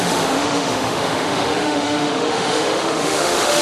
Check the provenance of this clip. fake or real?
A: fake